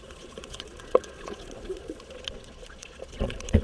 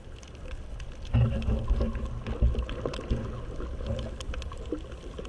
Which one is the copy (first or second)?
first